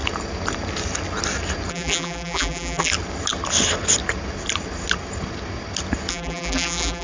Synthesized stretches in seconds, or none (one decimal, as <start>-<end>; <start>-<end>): 1.7-2.9; 6.1-7.0